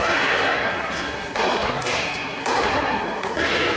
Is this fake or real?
fake